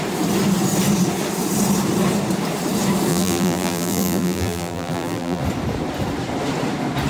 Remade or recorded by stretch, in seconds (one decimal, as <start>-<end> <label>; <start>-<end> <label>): 0.0-3.1 recorded; 3.1-5.4 remade; 5.4-7.1 recorded